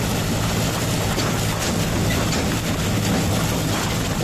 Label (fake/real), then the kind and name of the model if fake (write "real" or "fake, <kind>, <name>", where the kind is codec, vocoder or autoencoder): real